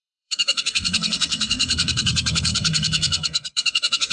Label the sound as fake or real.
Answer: fake